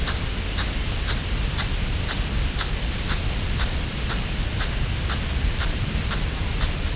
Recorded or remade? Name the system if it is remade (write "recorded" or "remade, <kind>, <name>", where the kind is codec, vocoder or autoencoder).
recorded